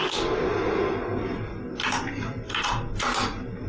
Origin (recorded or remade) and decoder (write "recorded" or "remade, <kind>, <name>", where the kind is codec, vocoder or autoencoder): recorded